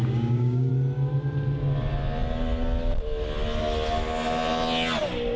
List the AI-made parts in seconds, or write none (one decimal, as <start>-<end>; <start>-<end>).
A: 0.0-0.7